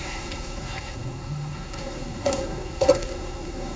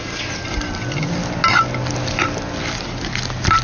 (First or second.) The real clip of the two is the second